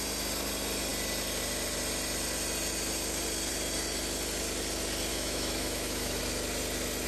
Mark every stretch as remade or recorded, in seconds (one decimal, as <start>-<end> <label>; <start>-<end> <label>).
0.0-5.1 recorded; 5.1-6.2 remade; 6.2-7.1 recorded